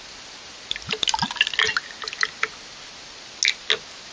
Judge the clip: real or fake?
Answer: real